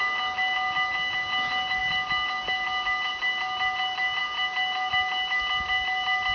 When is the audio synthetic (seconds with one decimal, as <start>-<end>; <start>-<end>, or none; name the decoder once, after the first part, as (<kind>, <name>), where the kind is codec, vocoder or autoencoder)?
none